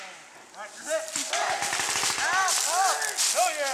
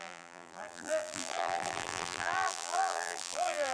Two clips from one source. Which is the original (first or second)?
first